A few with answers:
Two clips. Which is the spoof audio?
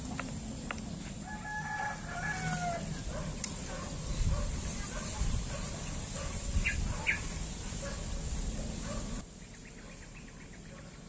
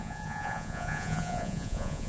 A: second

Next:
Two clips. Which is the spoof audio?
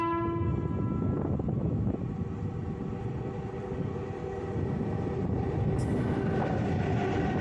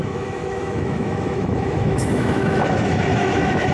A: second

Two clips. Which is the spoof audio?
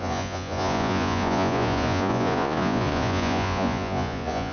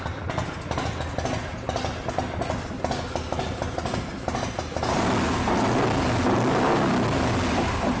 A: first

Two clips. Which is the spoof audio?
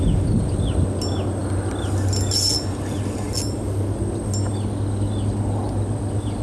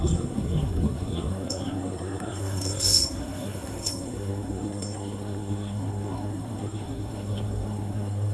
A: second